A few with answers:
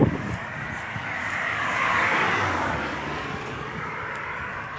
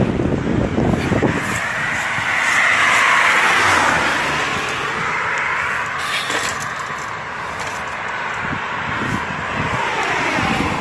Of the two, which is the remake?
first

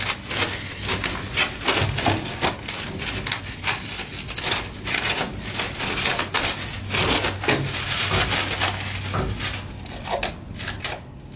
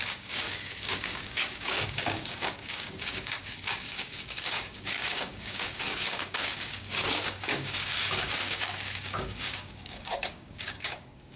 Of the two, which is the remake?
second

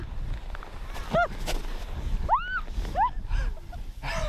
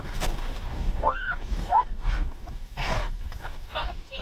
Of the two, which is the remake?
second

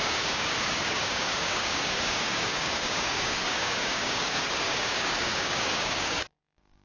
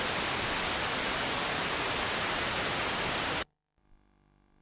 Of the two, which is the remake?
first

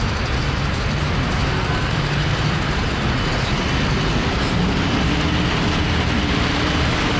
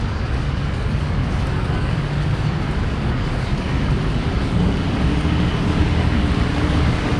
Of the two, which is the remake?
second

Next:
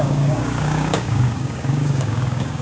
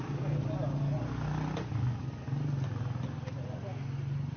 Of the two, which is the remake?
first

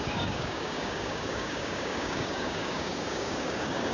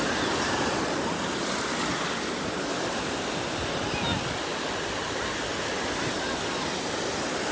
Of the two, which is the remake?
first